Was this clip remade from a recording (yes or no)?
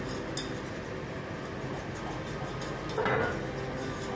no